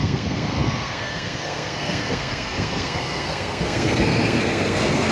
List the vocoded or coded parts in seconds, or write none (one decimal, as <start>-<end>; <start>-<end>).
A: 0.0-5.1

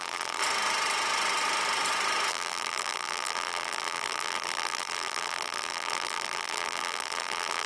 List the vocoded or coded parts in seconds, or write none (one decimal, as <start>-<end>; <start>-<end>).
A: 0.0-0.4; 2.3-7.7

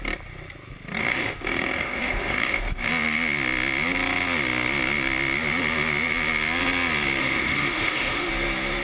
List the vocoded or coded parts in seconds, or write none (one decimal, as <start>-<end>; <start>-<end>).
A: 1.0-2.9; 7.2-8.3

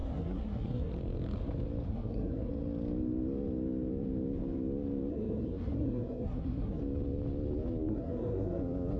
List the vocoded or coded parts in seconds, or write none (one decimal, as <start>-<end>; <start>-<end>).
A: 0.0-0.9; 1.9-2.5; 5.1-6.8; 7.9-8.6

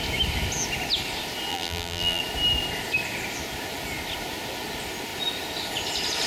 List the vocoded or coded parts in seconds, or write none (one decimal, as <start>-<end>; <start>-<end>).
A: 1.5-2.2

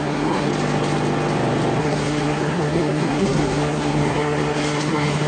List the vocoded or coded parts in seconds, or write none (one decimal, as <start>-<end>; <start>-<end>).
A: 0.0-0.5; 1.8-5.3

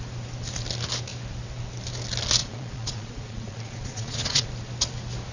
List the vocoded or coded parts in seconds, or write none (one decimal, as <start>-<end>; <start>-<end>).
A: 2.4-4.5